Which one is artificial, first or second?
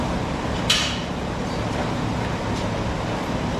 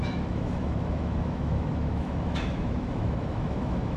second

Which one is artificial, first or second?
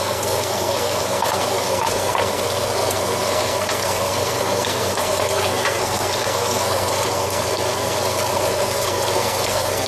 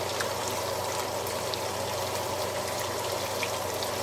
first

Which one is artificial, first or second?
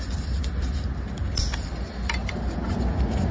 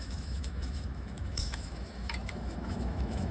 second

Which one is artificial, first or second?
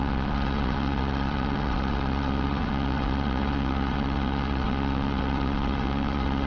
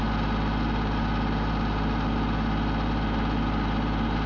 first